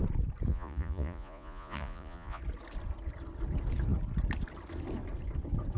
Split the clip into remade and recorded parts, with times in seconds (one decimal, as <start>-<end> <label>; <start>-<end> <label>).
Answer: 0.0-0.5 recorded; 0.5-2.4 remade; 2.4-5.8 recorded